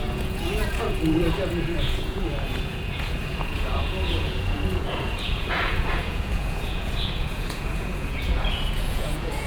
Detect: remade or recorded remade